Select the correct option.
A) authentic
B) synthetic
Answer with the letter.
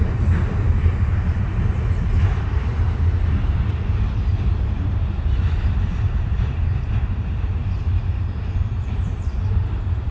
B